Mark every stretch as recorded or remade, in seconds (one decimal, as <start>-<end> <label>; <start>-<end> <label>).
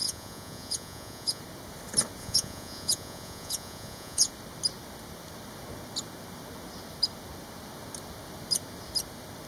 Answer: 0.0-1.4 remade; 1.4-2.2 recorded; 2.2-4.3 remade; 4.3-9.5 recorded